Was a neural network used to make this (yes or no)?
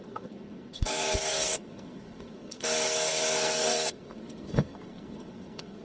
yes